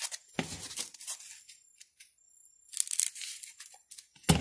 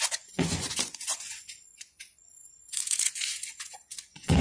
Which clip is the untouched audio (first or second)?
first